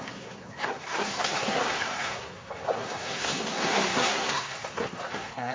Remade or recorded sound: remade